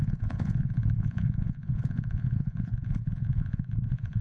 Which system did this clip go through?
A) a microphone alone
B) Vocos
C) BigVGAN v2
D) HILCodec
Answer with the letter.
B